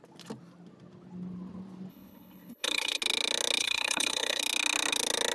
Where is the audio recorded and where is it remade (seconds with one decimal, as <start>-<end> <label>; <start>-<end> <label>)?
0.0-1.9 recorded; 1.9-3.0 remade; 3.0-3.6 recorded; 3.6-4.4 remade; 4.4-5.3 recorded